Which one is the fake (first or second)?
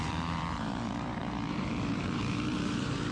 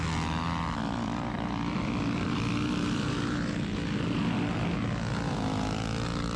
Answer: first